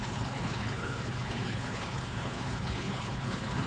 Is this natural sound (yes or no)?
no